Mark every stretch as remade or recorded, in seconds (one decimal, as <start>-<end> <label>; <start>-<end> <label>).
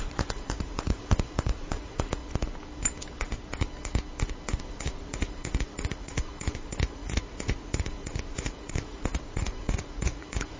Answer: 0.0-2.2 remade; 2.2-4.6 recorded; 4.6-10.6 remade